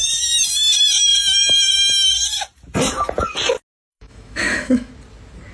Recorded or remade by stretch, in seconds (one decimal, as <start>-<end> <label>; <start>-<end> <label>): 0.0-3.9 recorded; 3.9-4.9 remade; 4.9-5.5 recorded